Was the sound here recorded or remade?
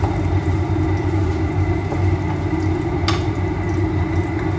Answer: recorded